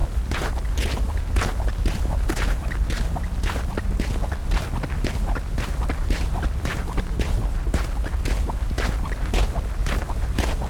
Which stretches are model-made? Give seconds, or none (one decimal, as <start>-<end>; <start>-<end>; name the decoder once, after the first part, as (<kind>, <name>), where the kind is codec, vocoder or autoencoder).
none